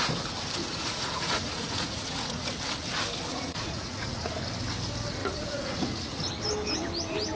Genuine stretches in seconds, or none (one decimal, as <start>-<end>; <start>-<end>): 0.0-0.6; 2.4-3.3; 4.3-5.2; 6.3-7.4